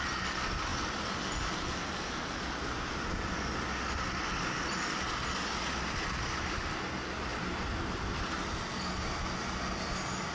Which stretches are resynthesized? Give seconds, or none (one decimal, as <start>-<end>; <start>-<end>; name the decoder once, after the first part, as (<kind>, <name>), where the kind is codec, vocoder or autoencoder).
0.7-2.9 (vocoder, BigVGAN v2); 7.3-8.1